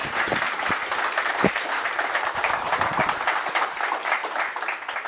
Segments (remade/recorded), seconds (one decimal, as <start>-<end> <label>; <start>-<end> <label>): 0.0-0.6 remade; 0.6-1.3 recorded; 1.3-3.8 remade; 3.8-5.1 recorded

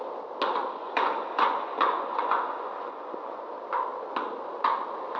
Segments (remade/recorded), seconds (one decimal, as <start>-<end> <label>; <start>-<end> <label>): 0.0-0.8 recorded; 0.8-3.5 remade; 3.5-5.2 recorded

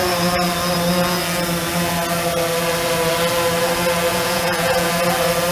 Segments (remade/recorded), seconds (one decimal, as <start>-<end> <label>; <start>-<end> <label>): 0.0-4.1 recorded; 4.1-4.9 remade; 4.9-5.5 recorded

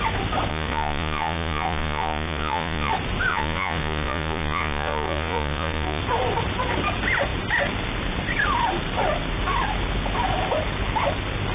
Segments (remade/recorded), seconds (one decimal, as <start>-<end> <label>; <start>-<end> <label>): 0.0-0.5 recorded; 0.5-2.9 remade; 2.9-3.3 recorded; 3.3-6.0 remade; 6.0-11.5 recorded

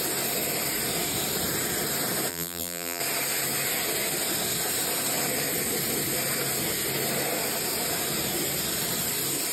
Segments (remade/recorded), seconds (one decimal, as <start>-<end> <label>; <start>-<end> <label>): 0.0-2.3 recorded; 2.3-3.0 remade; 3.0-9.5 recorded

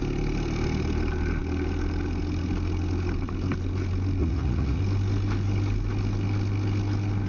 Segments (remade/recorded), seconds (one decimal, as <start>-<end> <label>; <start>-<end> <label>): 0.0-4.2 recorded; 4.2-4.8 remade; 4.8-7.3 recorded

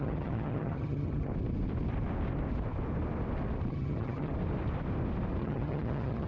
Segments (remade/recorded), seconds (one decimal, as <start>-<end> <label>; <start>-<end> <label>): 0.0-1.3 remade; 1.3-3.7 recorded; 3.7-4.3 remade; 4.3-5.4 recorded; 5.4-6.3 remade

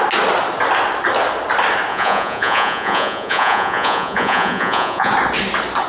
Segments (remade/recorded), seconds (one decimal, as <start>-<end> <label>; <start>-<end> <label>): 0.0-1.9 recorded; 1.9-5.1 remade; 5.1-5.9 recorded